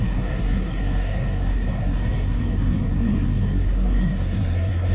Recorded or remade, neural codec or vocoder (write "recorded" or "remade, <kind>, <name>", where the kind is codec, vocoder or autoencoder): remade, codec, SNAC